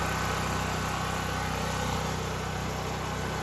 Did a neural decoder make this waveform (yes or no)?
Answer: no